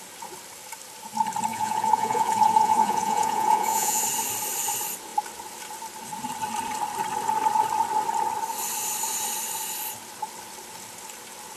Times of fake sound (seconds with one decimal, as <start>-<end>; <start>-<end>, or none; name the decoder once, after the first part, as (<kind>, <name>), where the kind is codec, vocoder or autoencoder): 1.5-4.0 (vocoder, Vocos)